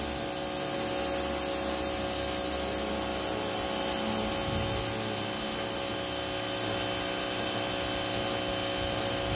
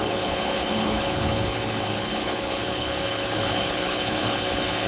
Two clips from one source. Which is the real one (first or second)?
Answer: first